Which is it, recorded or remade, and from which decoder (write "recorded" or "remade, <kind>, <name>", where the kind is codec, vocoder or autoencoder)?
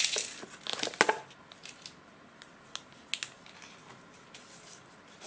recorded